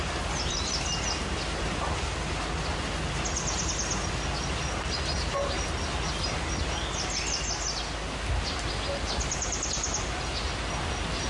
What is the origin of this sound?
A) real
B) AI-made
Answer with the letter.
A